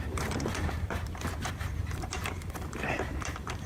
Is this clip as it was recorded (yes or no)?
no